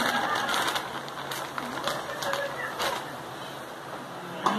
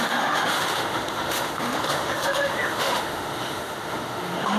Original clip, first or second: first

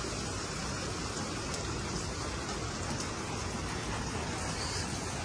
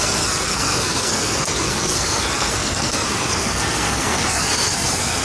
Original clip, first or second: first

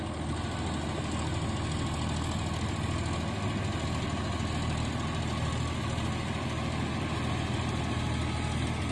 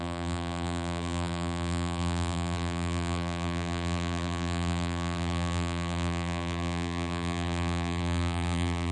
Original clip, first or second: first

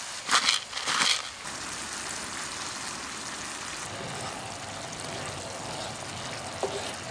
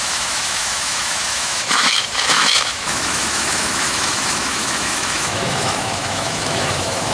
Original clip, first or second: first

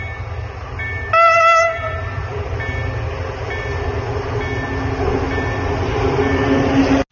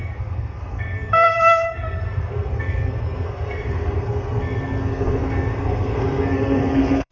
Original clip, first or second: first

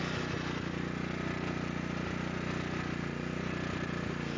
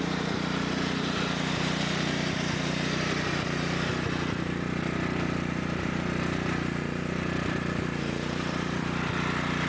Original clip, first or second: first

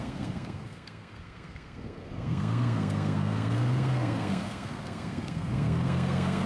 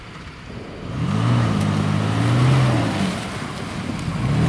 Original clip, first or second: second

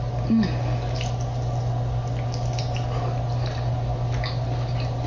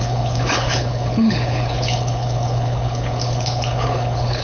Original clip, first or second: first